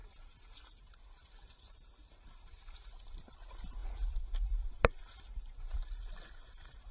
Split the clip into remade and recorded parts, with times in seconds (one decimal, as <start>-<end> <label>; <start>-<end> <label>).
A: 0.0-6.9 remade

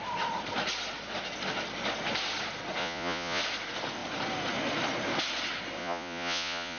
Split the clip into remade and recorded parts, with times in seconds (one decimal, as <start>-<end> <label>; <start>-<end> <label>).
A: 0.0-2.8 recorded; 2.8-3.4 remade; 3.4-5.8 recorded; 5.8-6.8 remade

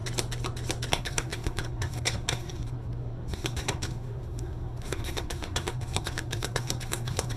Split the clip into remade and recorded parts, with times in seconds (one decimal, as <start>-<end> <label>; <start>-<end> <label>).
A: 0.0-0.9 recorded; 0.9-7.4 remade

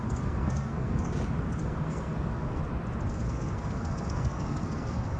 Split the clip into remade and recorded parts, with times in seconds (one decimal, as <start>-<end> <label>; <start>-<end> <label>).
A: 0.0-2.6 remade; 2.6-3.1 recorded; 3.1-5.2 remade

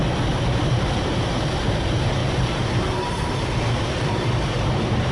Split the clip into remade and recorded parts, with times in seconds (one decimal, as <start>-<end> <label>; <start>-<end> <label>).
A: 0.0-0.5 recorded; 0.5-5.1 remade

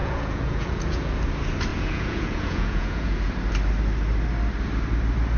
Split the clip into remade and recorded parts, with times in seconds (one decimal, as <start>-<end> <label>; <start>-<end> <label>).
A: 0.0-1.2 remade; 1.2-1.7 recorded; 1.7-3.2 remade; 3.2-5.4 recorded

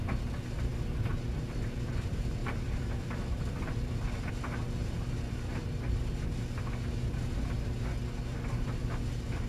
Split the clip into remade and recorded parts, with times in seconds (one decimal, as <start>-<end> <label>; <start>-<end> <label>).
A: 0.0-2.4 recorded; 2.4-4.3 remade; 4.3-9.5 recorded

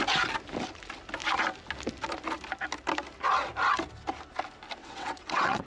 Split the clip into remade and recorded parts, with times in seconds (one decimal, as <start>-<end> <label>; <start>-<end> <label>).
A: 0.0-4.8 recorded; 4.8-5.7 remade